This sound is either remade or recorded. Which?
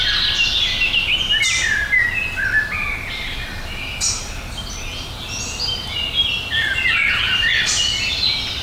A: recorded